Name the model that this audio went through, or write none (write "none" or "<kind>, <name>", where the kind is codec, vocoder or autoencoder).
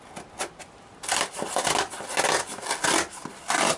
none